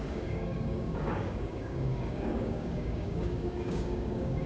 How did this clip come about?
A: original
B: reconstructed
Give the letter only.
B